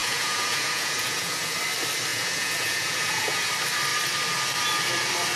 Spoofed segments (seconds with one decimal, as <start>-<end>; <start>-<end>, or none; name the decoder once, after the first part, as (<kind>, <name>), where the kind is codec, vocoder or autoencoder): 0.0-1.6 (vocoder, Vocos); 2.1-3.5